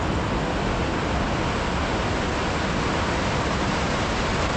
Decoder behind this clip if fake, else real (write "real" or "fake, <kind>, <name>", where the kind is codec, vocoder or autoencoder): real